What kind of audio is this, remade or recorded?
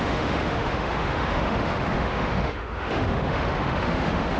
remade